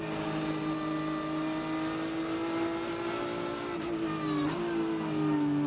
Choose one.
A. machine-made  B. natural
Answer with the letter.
B